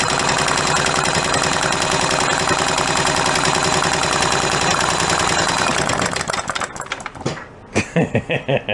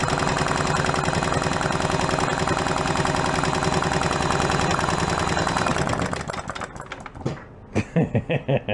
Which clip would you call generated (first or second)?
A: first